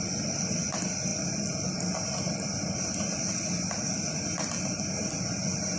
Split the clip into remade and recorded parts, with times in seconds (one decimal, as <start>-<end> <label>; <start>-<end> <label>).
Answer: 0.0-5.8 recorded